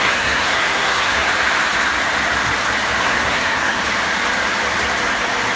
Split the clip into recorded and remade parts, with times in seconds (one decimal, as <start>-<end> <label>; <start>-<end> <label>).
0.0-1.3 remade; 1.3-3.0 recorded; 3.0-3.8 remade; 3.8-5.6 recorded